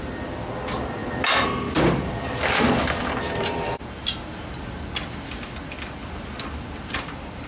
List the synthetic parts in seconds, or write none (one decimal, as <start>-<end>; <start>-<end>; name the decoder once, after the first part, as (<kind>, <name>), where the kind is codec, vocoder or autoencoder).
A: 1.0-3.7 (vocoder, BigVGAN v2); 6.0-7.1